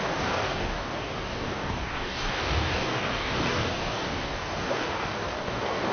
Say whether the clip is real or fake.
fake